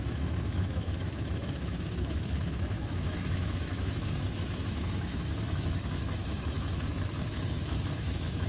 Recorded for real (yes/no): no